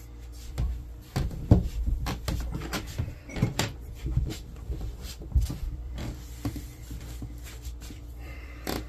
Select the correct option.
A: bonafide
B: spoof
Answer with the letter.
B